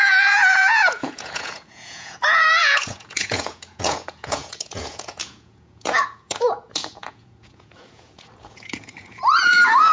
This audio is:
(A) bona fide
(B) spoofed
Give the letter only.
B